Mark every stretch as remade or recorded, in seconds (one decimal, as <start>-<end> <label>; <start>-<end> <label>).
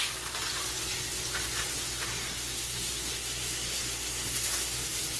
0.0-1.7 recorded; 1.7-4.8 remade; 4.8-5.2 recorded